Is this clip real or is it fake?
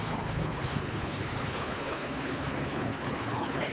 fake